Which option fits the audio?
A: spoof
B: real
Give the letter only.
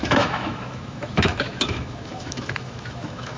A